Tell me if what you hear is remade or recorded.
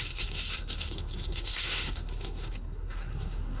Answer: remade